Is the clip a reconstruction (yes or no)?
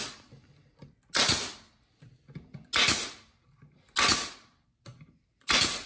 no